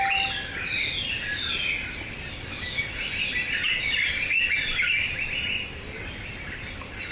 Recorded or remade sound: recorded